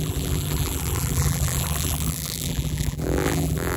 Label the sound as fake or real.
fake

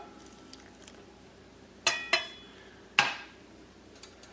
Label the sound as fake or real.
real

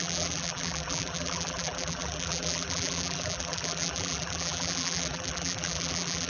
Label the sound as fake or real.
fake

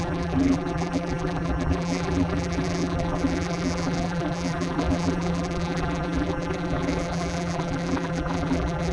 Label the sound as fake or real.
fake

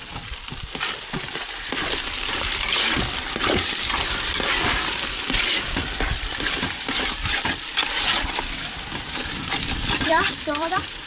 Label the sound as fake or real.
fake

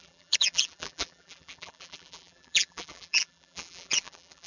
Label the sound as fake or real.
fake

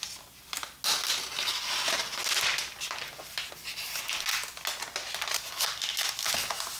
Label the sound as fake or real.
real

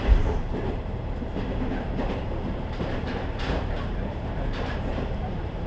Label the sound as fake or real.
fake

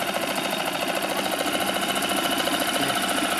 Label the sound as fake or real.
real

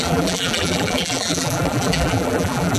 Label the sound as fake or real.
fake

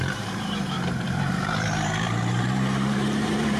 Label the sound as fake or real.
fake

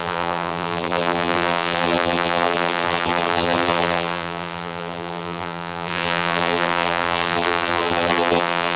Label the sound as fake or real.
fake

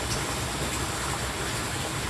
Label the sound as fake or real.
real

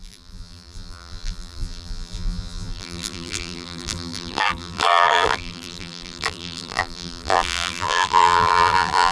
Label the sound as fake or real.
fake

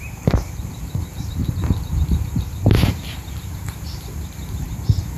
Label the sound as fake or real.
fake